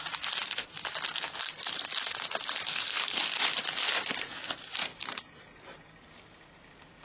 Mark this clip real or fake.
real